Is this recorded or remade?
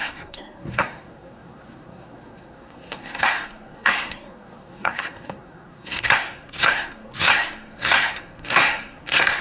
remade